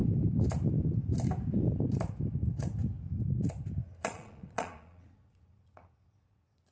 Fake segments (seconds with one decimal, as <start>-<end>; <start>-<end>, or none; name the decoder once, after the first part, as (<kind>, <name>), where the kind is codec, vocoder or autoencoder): 4.0-6.7 (vocoder, Vocos)